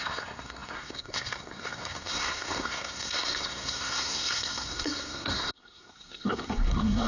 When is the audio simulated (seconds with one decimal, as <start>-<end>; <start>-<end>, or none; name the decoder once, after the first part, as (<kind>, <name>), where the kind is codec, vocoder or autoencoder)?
0.0-7.1 (codec, SNAC)